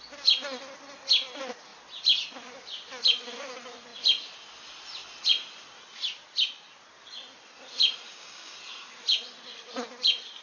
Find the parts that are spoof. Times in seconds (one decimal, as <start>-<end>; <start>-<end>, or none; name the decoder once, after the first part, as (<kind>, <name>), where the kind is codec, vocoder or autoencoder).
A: 8.1-8.6 (codec, DAC)